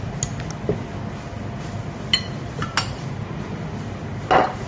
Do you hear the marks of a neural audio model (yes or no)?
no